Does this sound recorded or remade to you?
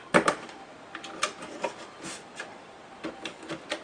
recorded